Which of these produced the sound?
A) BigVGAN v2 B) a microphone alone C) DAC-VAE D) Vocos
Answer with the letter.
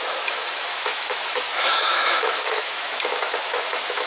C